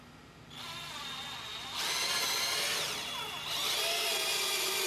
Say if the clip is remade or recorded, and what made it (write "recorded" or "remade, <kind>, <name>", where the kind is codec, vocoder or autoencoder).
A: recorded